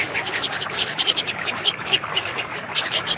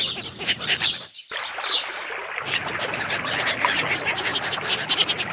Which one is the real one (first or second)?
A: second